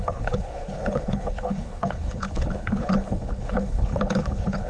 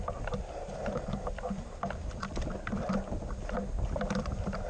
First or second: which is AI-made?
first